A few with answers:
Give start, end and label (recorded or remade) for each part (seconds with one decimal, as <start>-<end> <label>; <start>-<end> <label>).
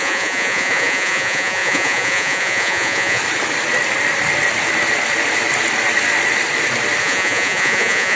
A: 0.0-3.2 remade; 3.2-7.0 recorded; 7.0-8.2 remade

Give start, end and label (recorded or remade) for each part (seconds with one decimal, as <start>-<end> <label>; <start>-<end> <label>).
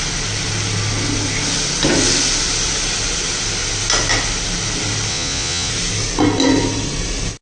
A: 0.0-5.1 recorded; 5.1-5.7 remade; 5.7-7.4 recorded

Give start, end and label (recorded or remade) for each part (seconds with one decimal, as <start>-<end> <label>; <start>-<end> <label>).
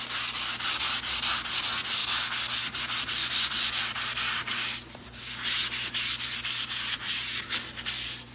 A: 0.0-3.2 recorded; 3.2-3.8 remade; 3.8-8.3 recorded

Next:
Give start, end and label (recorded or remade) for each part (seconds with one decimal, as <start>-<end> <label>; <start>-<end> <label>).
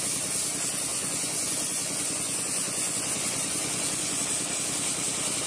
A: 0.0-0.9 recorded; 0.9-4.2 remade; 4.2-5.5 recorded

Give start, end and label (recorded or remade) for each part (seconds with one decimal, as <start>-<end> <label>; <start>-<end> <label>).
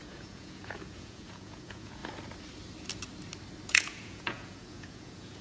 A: 0.0-2.0 remade; 2.0-3.7 recorded; 3.7-5.4 remade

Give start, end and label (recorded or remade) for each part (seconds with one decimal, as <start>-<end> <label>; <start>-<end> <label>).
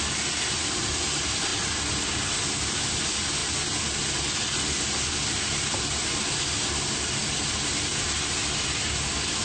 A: 0.0-9.4 recorded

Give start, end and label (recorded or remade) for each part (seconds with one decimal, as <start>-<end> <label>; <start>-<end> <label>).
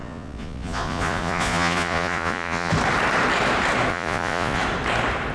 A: 0.0-2.7 remade; 2.7-3.9 recorded; 3.9-4.6 remade; 4.6-5.3 recorded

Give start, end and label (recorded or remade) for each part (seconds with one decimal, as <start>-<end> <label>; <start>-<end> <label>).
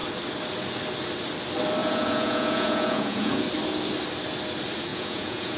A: 0.0-1.8 recorded; 1.8-3.4 remade; 3.4-4.9 recorded; 4.9-5.6 remade